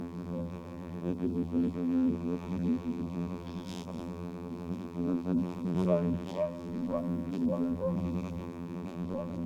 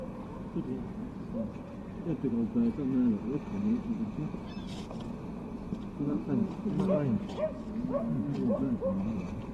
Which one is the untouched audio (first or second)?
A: second